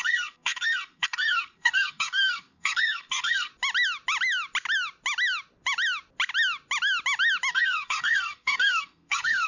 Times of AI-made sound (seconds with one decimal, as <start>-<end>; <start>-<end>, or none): 0.0-3.5; 7.5-9.5